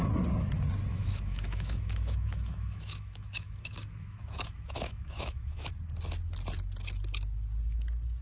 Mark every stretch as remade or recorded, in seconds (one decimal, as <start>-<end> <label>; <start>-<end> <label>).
0.0-0.9 recorded; 0.9-5.7 remade; 5.7-8.2 recorded